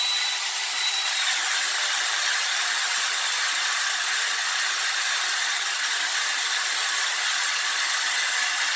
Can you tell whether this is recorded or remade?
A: recorded